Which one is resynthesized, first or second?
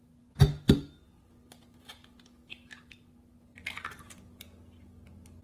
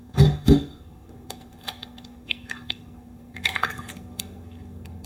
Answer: second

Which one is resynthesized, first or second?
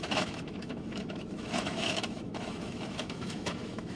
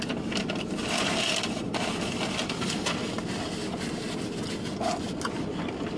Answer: first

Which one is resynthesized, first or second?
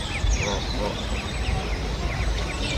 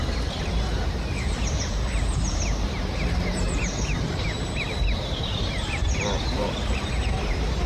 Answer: second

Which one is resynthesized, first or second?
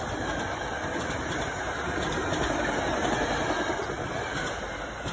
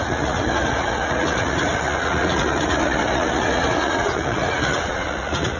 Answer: second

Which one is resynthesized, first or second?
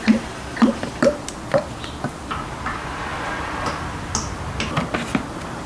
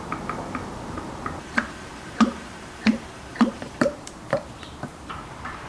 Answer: second